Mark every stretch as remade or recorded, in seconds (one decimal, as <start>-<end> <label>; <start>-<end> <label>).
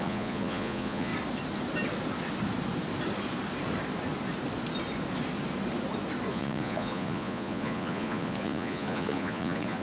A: 0.0-1.1 remade; 1.1-6.3 recorded; 6.3-9.8 remade